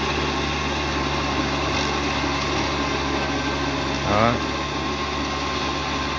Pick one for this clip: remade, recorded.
recorded